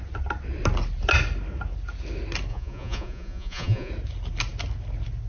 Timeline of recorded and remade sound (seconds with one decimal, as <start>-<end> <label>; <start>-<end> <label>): 0.0-2.5 recorded; 2.5-3.9 remade; 3.9-5.3 recorded